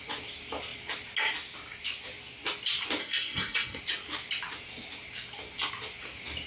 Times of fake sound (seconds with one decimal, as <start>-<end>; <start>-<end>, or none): 3.0-3.8